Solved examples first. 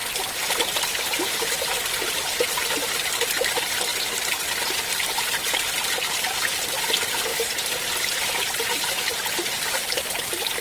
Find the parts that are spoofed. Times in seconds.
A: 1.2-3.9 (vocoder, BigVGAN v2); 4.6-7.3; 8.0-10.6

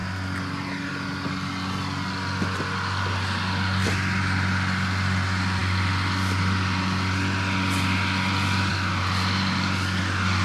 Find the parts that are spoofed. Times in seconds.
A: none

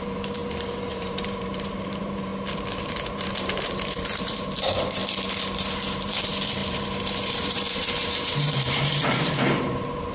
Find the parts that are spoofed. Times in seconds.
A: 0.0-2.3 (vocoder, BigVGAN v2); 3.1-5.0; 5.6-10.1

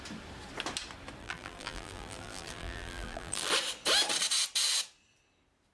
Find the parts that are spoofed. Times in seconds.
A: 1.2-3.5 (vocoder, BigVGAN v2)

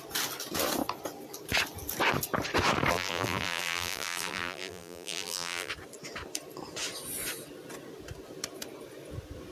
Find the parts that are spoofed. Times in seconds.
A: 2.9-5.7 (vocoder, BigVGAN v2)